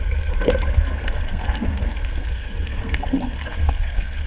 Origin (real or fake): fake